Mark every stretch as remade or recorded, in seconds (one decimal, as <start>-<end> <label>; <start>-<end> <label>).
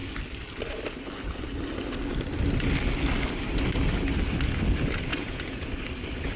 0.0-5.1 recorded; 5.1-5.7 remade; 5.7-6.4 recorded